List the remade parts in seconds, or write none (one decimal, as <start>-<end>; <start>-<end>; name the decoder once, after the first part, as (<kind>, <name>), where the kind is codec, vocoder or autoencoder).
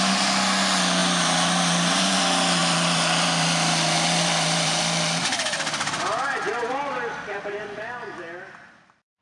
1.0-2.2 (vocoder, BigVGAN v2); 2.6-7.4